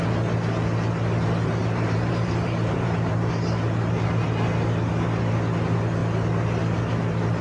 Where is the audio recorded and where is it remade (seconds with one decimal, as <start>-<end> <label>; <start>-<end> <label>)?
0.0-1.6 recorded; 1.6-3.3 remade; 3.3-7.4 recorded